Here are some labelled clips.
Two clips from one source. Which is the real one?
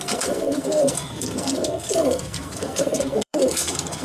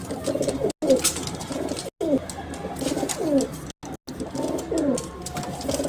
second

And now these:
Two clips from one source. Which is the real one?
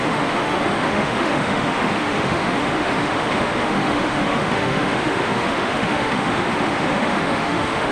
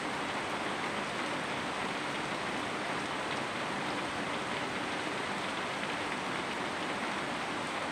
second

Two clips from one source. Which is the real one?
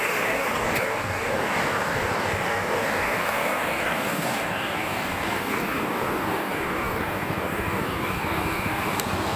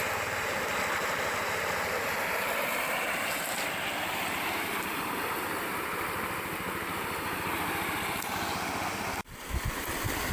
second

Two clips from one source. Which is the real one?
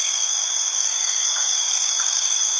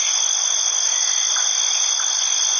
second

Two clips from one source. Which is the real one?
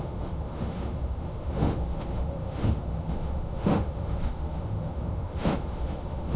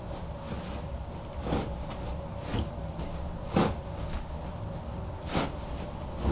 second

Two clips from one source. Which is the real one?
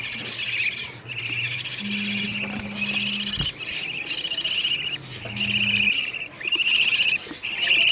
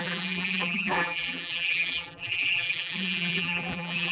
first